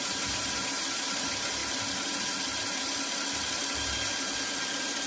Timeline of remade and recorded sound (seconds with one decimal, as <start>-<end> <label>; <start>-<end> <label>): 0.0-5.1 recorded